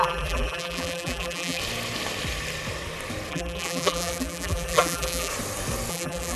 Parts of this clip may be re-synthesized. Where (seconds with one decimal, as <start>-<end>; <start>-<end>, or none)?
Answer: 0.0-1.6; 3.3-5.3; 5.9-6.4